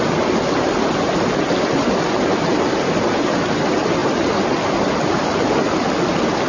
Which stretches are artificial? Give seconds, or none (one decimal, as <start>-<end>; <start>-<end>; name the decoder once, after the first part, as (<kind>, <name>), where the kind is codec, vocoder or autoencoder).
2.3-3.3 (vocoder, BigVGAN v2)